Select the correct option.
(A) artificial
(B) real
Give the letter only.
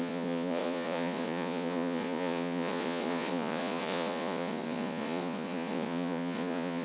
A